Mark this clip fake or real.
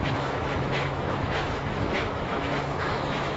fake